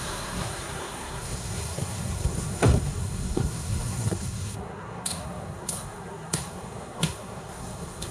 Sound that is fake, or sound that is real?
fake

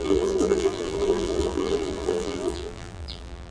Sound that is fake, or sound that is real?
fake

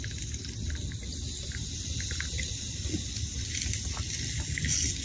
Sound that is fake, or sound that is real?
real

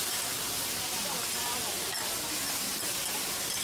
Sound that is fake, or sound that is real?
real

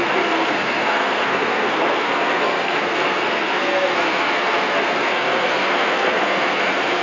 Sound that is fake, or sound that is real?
fake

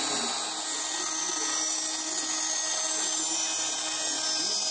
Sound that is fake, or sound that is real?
real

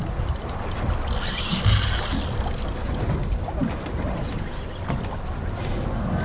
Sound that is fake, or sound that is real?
real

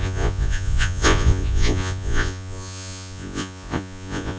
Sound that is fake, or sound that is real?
fake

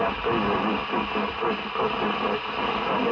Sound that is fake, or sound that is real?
real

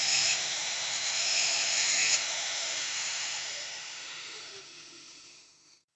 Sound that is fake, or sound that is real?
fake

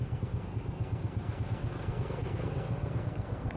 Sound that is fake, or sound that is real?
fake